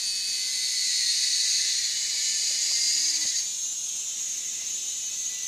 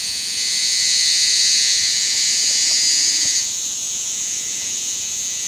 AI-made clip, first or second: second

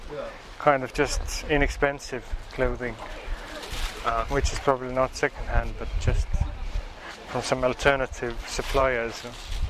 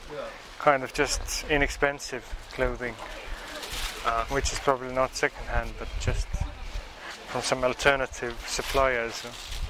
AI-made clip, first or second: first